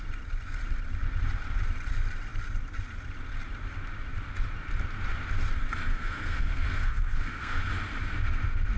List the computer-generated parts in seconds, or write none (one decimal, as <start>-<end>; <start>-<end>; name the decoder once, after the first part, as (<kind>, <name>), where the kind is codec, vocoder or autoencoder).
5.9-7.7 (codec, SNAC)